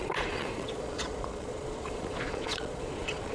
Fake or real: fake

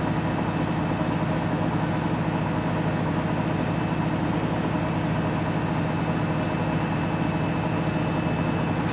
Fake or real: real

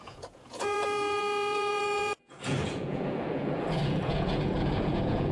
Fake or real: fake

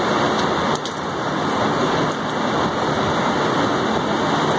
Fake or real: real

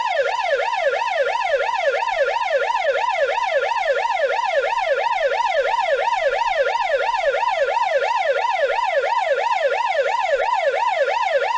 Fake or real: real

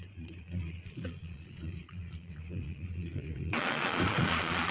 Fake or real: fake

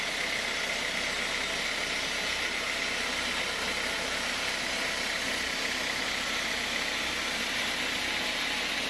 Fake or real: real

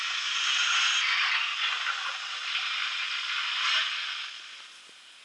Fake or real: real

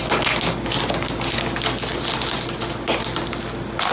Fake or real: real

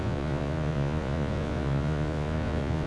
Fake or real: fake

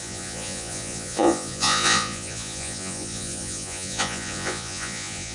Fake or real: fake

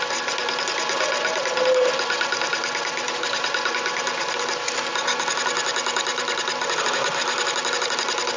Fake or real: real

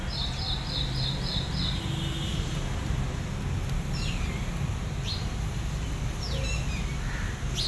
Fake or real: real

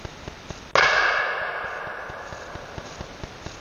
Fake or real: real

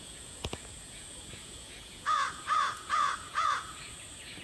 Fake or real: fake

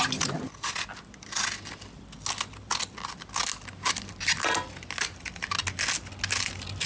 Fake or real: real